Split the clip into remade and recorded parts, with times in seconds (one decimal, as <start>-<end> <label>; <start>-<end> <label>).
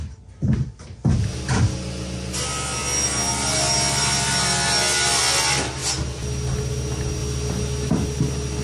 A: 0.0-8.6 recorded